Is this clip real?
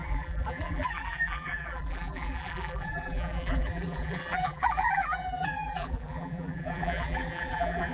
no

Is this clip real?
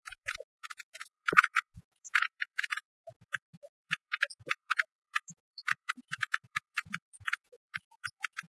no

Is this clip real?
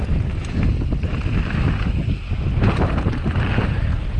yes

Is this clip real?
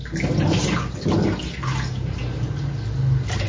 yes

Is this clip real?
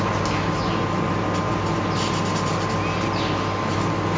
yes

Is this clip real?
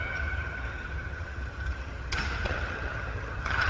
no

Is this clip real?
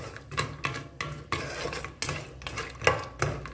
yes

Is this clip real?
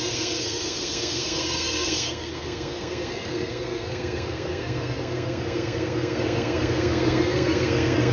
no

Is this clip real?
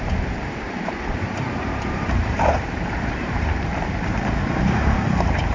no